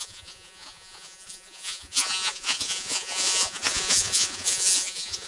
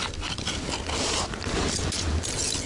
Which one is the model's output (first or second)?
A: first